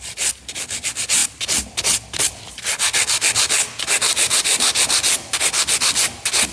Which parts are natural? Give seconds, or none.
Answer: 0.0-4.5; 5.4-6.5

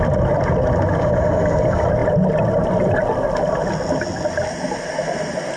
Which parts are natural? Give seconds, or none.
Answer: 0.0-5.6

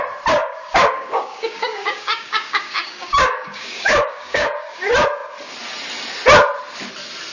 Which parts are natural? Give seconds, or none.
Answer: 0.0-0.4; 4.8-7.3

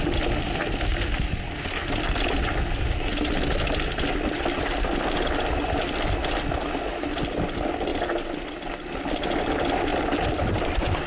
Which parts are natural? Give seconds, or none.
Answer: 0.0-9.9

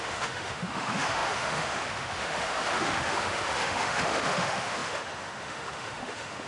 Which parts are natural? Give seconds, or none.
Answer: none

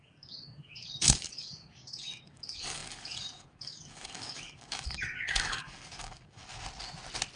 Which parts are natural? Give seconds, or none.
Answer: 6.4-7.4

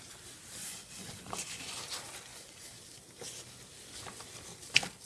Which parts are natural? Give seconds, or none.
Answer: 0.0-0.6; 1.8-2.3; 2.8-5.1